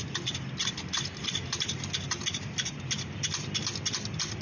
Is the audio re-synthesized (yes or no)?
no